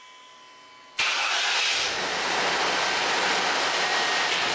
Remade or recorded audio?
recorded